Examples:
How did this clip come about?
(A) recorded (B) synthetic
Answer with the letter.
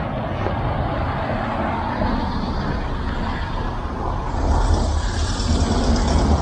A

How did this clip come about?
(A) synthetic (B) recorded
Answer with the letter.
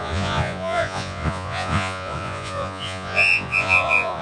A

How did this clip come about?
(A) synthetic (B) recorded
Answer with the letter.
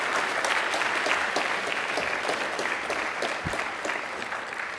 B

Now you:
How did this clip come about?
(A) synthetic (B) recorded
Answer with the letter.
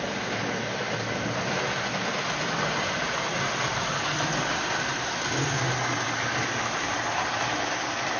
B